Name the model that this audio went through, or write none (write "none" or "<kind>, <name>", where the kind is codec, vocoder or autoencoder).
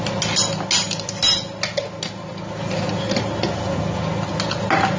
none